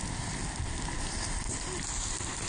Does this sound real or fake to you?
real